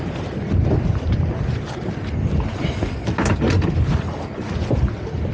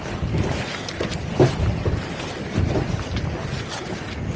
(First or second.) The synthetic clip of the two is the second